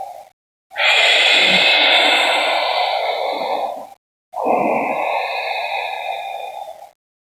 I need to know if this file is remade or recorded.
recorded